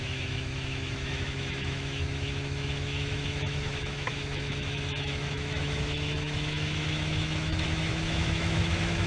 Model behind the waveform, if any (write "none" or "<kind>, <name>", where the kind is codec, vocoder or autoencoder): autoencoder, DAC-VAE